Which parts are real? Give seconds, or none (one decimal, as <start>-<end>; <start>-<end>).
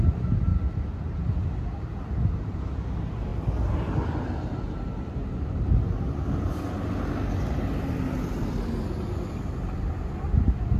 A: 0.0-10.8